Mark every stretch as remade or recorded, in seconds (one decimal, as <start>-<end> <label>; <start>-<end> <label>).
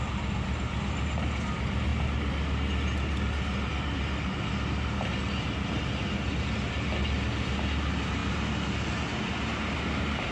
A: 0.0-10.3 recorded